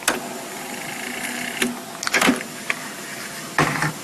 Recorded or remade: recorded